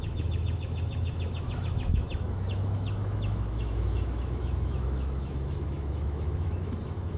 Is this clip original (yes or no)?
no